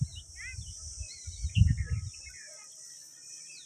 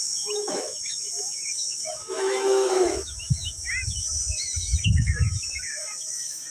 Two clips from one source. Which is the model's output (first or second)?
second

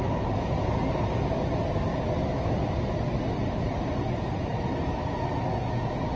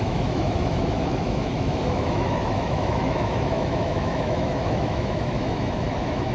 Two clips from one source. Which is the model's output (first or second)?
second